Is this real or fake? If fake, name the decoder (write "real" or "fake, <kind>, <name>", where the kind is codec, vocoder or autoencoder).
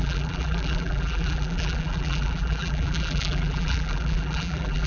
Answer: fake, vocoder, BigVGAN v2